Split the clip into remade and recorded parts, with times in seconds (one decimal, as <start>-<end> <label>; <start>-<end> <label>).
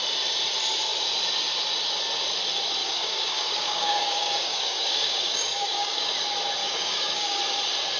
0.0-2.8 recorded; 2.8-6.1 remade; 6.1-6.6 recorded; 6.6-7.4 remade; 7.4-8.0 recorded